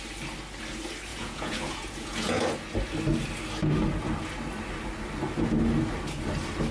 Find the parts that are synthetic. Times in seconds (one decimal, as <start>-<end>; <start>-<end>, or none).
1.1-2.4